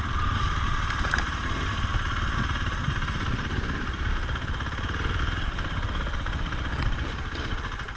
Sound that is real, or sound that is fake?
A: fake